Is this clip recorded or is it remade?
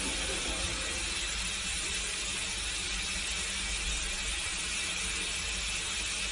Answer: recorded